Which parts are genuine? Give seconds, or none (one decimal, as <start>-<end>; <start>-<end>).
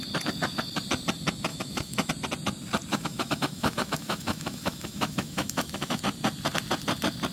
0.0-1.5; 2.1-2.9; 6.0-7.3